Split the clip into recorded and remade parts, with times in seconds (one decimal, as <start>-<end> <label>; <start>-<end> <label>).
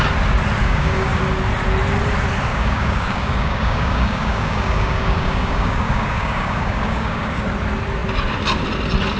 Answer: 0.0-0.6 recorded; 0.6-1.2 remade; 1.2-2.5 recorded; 2.5-7.4 remade; 7.4-9.2 recorded